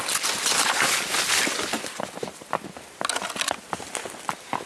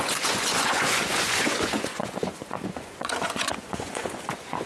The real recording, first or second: first